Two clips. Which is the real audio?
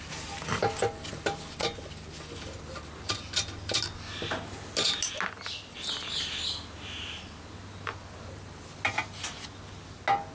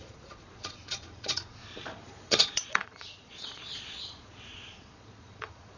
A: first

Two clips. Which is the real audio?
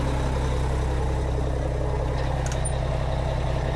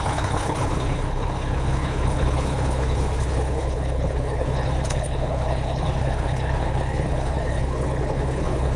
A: first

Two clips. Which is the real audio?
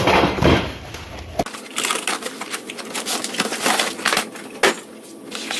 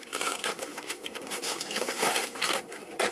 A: first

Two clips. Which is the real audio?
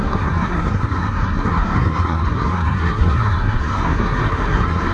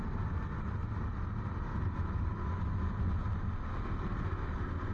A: second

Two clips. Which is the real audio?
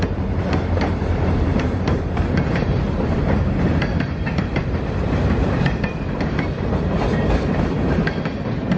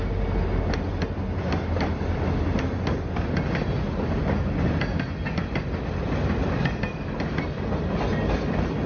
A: second